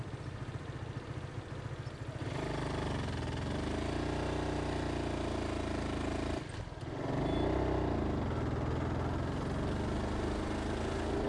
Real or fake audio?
real